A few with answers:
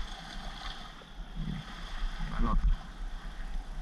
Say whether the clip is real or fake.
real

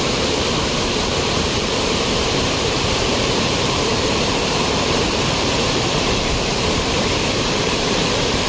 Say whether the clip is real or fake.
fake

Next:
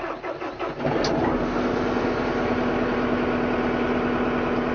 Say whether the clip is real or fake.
real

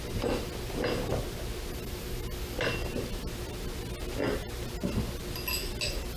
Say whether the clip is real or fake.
real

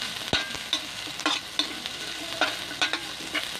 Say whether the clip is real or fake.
real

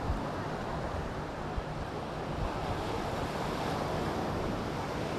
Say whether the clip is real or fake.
real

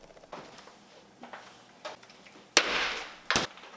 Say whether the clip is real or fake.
real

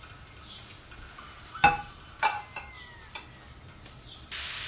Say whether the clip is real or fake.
real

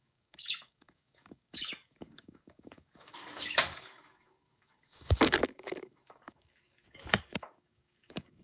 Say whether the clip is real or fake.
fake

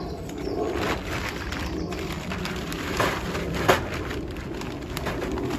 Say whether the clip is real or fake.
real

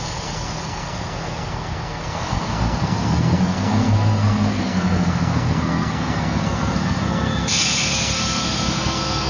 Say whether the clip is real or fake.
fake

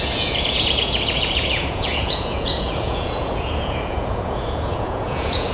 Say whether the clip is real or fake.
fake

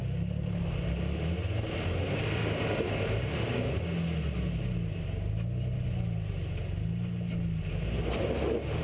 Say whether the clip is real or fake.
real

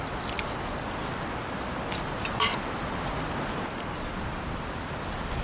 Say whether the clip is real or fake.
real